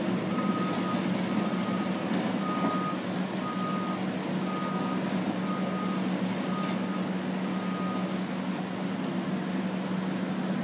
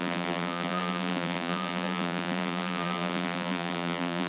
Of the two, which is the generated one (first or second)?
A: second